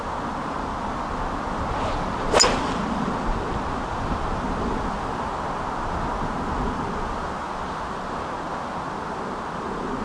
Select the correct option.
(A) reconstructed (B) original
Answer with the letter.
B